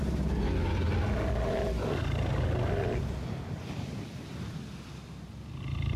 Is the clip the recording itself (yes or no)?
yes